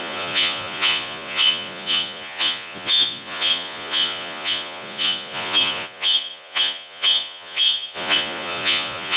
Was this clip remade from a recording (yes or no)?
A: yes